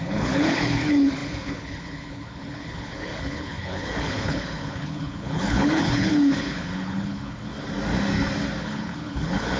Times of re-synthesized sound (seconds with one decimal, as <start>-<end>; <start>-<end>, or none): 0.0-7.5; 8.6-9.6